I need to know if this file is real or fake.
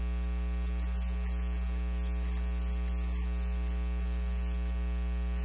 real